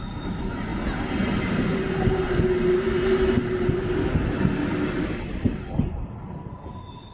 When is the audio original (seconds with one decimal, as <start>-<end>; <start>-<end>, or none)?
0.0-7.1